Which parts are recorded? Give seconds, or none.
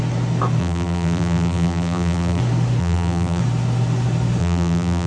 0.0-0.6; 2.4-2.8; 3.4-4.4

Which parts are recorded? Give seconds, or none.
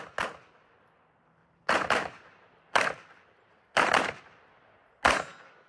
0.0-1.4; 4.2-5.7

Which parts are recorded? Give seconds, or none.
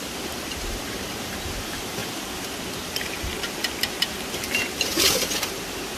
2.0-2.7; 3.3-4.1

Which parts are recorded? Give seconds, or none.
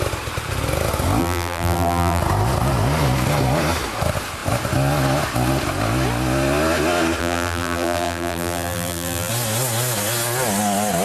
0.0-1.2; 2.2-7.2; 9.3-11.0